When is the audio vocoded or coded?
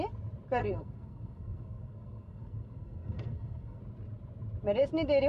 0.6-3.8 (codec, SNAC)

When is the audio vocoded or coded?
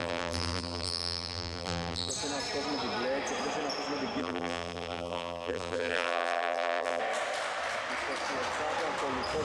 0.0-2.1 (vocoder, BigVGAN v2); 4.2-7.0